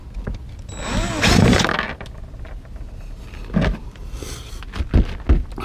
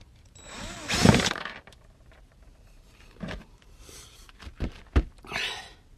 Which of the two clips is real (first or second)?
first